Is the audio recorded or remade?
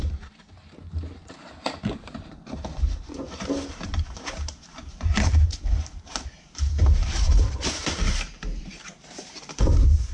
remade